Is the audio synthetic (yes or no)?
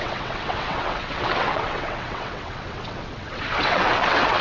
yes